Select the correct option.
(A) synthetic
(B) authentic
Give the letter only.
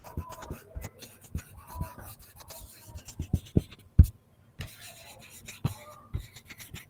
B